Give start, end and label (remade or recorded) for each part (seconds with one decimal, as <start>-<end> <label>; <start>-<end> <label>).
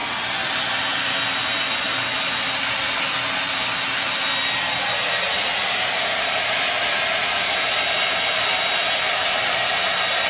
0.0-10.3 recorded